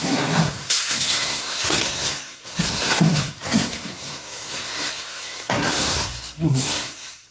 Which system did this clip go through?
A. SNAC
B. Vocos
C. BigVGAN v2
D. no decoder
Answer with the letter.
A